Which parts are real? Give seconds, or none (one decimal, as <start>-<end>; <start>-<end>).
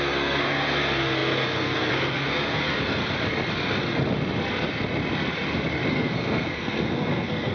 3.0-5.9